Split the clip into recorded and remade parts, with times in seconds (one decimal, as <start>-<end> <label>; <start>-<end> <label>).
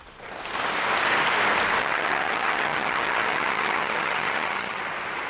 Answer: 0.0-1.8 recorded; 1.8-4.8 remade; 4.8-5.3 recorded